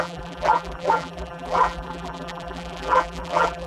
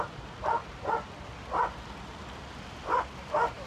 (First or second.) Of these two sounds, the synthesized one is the first